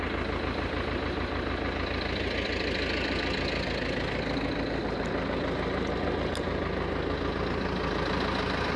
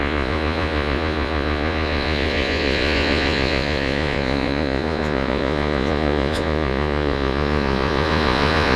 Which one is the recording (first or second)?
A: first